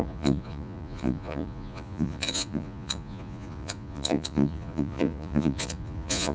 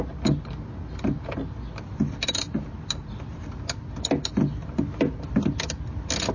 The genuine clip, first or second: second